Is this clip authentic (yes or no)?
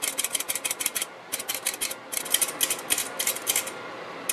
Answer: yes